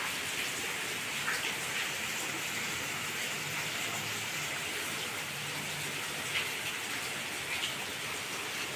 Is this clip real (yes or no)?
yes